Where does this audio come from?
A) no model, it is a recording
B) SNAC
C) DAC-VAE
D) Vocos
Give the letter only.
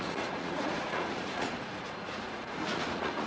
D